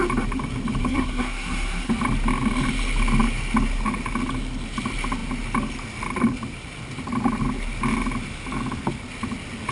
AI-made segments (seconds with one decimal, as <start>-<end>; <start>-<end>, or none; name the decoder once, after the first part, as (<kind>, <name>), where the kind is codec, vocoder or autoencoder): 0.8-1.9 (codec, SNAC)